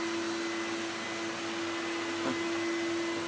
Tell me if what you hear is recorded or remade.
recorded